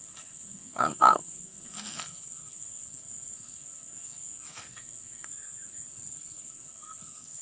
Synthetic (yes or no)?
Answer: yes